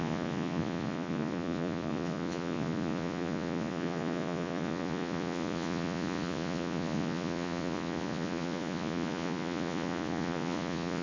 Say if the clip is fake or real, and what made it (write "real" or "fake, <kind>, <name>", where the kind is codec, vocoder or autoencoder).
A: fake, vocoder, Vocos